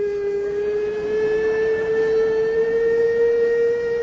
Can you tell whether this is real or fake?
real